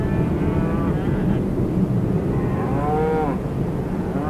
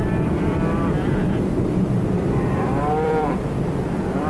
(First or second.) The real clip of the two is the first